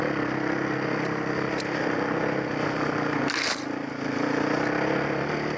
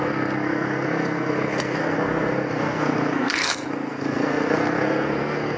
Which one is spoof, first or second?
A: second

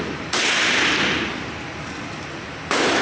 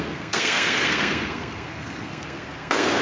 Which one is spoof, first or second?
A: second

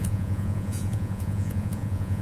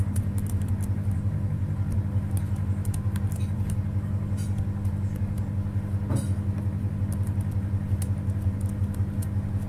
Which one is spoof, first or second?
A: first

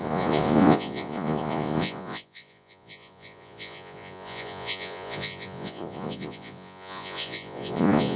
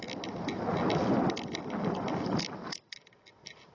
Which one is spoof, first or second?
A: first